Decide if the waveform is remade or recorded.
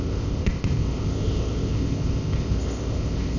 remade